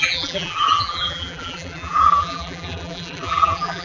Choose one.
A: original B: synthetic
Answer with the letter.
B